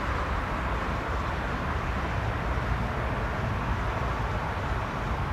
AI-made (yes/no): no